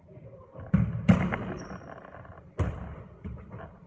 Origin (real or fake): real